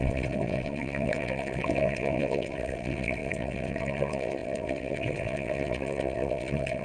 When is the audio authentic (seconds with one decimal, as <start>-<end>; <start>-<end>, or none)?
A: none